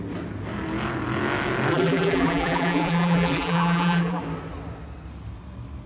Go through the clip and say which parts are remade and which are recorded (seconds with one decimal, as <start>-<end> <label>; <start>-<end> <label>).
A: 0.0-1.7 recorded; 1.7-4.2 remade; 4.2-5.9 recorded

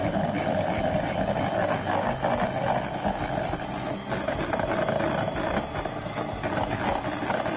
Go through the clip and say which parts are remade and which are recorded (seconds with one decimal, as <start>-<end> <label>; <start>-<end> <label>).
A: 0.0-1.2 remade; 1.2-7.6 recorded